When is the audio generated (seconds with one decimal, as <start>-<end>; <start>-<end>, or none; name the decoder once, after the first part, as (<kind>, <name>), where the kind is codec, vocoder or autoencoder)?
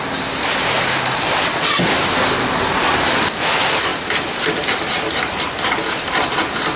none